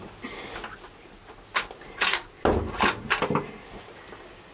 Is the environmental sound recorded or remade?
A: recorded